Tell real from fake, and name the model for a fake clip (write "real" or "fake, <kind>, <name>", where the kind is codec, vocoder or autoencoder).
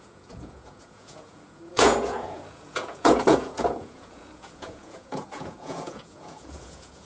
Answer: fake, vocoder, Vocos